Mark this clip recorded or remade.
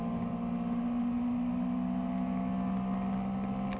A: recorded